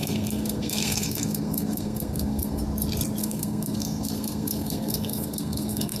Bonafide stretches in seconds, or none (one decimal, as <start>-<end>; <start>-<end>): 2.6-3.2